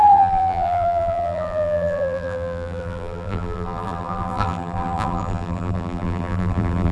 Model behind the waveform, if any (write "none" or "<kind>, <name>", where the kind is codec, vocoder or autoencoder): vocoder, BigVGAN v2